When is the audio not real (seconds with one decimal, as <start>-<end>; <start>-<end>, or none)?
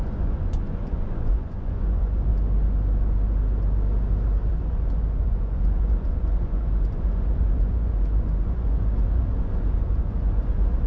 0.0-2.3; 4.5-10.9